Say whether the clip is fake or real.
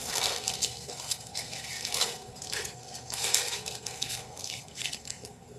fake